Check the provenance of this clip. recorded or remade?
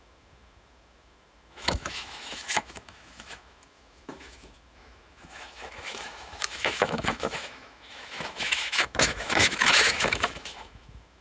remade